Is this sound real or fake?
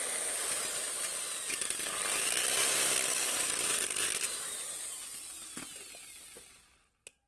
real